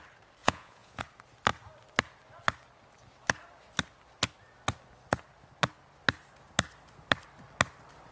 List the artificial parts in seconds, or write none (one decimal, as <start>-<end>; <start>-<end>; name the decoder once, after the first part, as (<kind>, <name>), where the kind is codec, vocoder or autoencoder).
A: 0.4-1.0 (vocoder, Vocos)